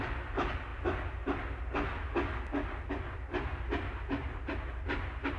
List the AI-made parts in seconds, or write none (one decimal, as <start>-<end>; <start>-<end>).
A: none

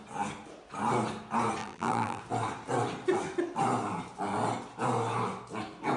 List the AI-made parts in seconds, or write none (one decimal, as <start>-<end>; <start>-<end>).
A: 1.6-2.2

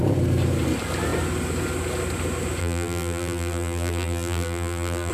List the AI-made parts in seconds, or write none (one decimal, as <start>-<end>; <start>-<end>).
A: 2.6-5.1

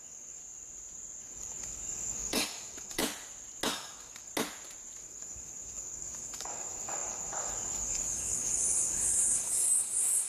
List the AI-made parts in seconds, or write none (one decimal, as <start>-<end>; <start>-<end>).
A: 0.0-0.4; 1.2-3.0; 3.7-4.3; 5.0-10.3

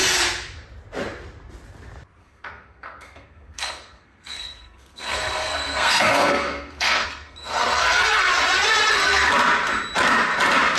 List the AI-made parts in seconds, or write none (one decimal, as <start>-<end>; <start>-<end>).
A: 2.2-8.3; 8.9-9.3